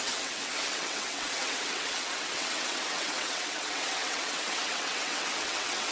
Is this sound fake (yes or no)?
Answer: yes